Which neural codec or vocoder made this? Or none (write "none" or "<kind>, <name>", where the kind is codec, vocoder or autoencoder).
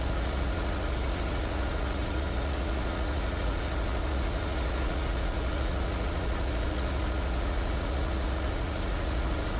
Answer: vocoder, Vocos